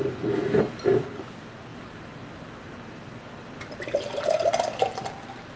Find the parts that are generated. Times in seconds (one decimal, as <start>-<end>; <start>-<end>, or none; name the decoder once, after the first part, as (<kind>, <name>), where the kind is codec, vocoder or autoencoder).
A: 0.0-0.6 (vocoder, BigVGAN v2); 1.7-2.2